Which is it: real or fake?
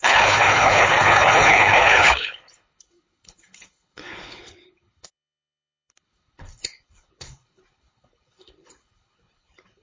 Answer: fake